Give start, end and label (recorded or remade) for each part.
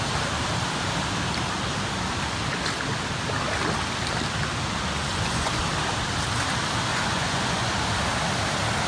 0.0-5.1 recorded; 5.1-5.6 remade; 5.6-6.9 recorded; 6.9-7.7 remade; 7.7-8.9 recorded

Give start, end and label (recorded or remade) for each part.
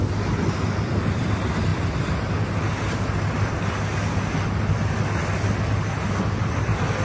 0.0-7.0 recorded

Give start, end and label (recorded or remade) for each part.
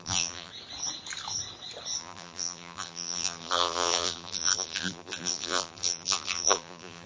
0.0-0.5 remade; 0.5-2.0 recorded; 2.0-7.1 remade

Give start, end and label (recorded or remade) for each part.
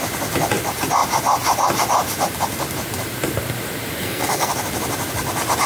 0.0-4.0 recorded; 4.0-4.5 remade; 4.5-5.7 recorded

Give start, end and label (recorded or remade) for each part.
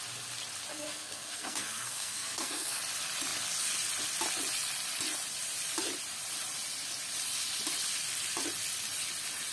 0.0-0.7 recorded; 0.7-2.8 remade; 2.8-9.5 recorded